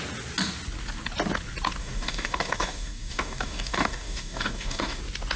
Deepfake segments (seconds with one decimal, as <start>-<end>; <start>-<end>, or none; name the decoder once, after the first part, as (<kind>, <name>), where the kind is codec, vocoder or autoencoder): 1.8-5.0 (codec, DAC)